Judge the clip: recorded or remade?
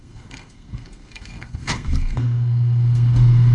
remade